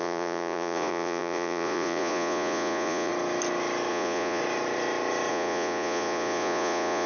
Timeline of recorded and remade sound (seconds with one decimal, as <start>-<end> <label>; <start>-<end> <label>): 0.0-3.1 remade; 3.1-3.9 recorded; 3.9-4.4 remade; 4.4-5.3 recorded; 5.3-7.1 remade

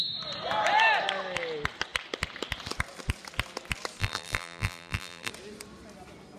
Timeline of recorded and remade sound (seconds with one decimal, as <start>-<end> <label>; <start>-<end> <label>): 0.0-4.0 recorded; 4.0-5.3 remade; 5.3-6.4 recorded

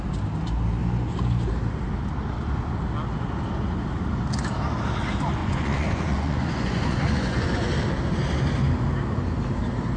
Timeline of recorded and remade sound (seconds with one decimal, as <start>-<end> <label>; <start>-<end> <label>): 0.0-5.4 recorded; 5.4-7.5 remade; 7.5-10.0 recorded

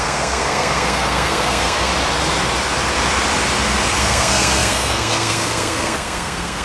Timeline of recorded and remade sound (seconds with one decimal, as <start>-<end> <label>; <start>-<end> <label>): 0.0-1.9 remade; 1.9-4.0 recorded; 4.0-6.6 remade